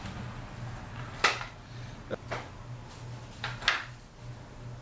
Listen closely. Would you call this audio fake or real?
real